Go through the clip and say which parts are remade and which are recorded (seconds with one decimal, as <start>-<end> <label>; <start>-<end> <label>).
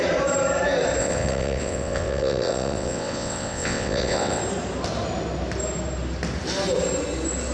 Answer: 0.0-1.0 recorded; 1.0-4.4 remade; 4.4-7.5 recorded